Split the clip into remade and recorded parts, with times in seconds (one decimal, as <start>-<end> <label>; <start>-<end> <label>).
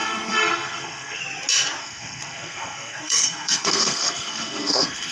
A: 0.0-1.2 remade; 1.2-1.8 recorded; 1.8-5.1 remade